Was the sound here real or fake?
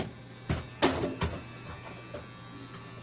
real